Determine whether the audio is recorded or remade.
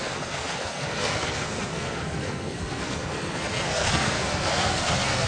remade